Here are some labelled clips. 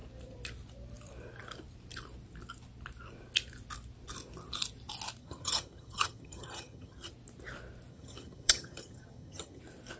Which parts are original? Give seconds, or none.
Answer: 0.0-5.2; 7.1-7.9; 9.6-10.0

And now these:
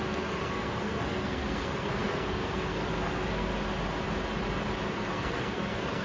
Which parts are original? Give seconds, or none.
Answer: 3.5-4.9

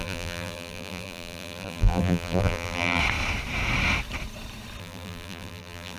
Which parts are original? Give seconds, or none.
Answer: 3.0-4.8